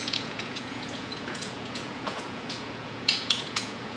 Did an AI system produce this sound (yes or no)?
yes